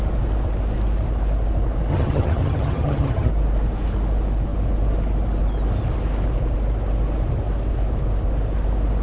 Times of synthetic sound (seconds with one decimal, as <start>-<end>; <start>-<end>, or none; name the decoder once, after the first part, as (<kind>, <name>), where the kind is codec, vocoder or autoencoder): 1.9-3.3 (vocoder, HiFi-GAN)